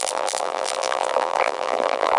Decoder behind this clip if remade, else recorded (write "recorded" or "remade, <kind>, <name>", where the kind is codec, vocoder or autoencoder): remade, vocoder, BigVGAN v2